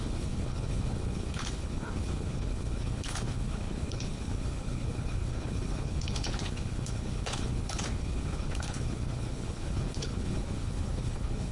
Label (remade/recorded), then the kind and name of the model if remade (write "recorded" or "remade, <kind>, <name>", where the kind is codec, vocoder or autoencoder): remade, codec, HILCodec